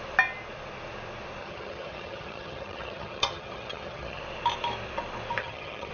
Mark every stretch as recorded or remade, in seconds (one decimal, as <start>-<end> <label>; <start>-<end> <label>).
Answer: 0.0-1.4 recorded; 1.4-4.2 remade; 4.2-5.4 recorded; 5.4-5.9 remade